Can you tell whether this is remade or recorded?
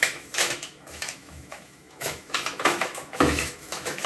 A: remade